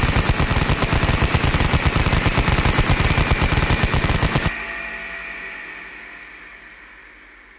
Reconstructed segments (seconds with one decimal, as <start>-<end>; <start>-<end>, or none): none

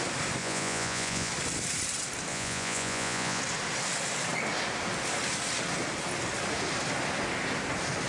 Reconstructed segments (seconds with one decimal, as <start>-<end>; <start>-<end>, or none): 0.4-1.3; 2.3-3.4

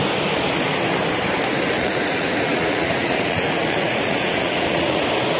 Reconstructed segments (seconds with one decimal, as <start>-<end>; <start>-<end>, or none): 1.8-5.0

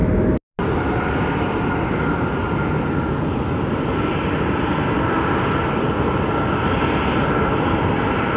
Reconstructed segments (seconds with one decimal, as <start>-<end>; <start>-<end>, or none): none

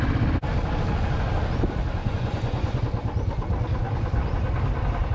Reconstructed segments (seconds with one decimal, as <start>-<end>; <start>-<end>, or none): 2.0-2.8

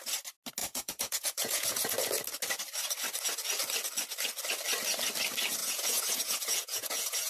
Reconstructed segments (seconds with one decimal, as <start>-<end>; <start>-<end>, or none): 0.6-1.9; 5.6-7.3

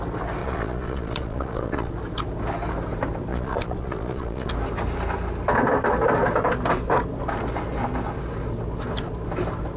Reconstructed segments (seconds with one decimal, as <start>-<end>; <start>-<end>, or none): 0.4-1.9; 3.3-4.5

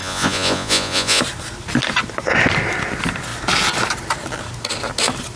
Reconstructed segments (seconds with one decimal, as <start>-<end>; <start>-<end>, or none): 0.0-1.2